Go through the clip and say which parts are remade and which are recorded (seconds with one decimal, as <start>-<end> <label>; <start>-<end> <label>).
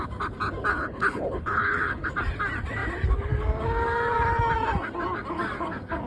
0.0-0.7 recorded; 0.7-2.1 remade; 2.1-6.1 recorded